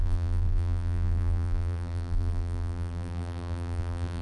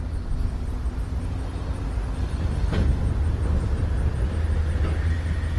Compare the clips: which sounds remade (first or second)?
first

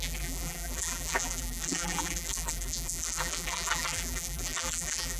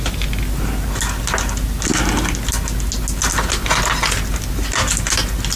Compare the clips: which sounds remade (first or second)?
first